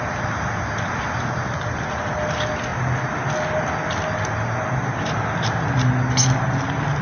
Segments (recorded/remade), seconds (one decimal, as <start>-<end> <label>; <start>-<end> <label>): 0.0-7.0 recorded